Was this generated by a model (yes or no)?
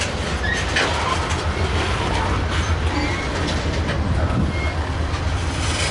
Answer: no